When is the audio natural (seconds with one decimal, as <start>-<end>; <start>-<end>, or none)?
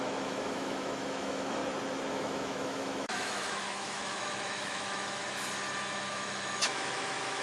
1.6-2.1; 5.2-6.1